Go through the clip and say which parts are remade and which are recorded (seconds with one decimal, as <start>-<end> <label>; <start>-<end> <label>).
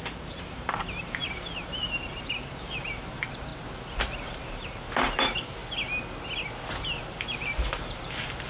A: 0.0-3.5 remade; 3.5-4.1 recorded; 4.1-5.6 remade; 5.6-7.0 recorded; 7.0-8.5 remade